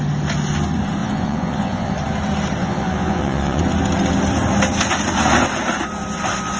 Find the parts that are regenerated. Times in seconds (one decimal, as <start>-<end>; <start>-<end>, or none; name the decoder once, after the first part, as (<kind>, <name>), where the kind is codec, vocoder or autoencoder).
1.0-1.9 (vocoder, Vocos); 2.6-3.6